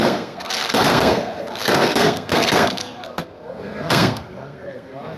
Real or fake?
fake